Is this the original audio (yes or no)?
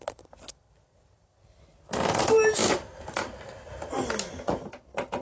yes